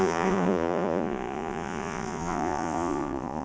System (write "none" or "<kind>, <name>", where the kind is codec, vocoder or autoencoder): vocoder, Vocos